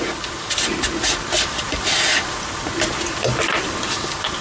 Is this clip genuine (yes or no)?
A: yes